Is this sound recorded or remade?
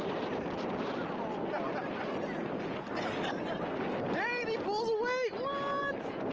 recorded